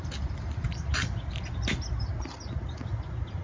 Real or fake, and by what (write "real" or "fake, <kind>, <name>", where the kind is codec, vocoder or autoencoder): real